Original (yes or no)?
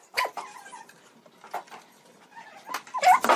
yes